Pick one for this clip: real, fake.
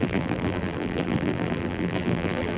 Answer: fake